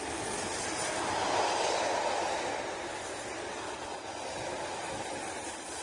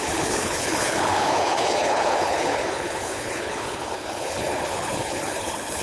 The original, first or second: first